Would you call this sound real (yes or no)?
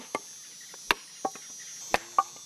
yes